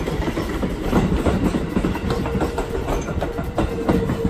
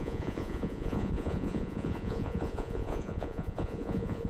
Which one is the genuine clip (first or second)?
first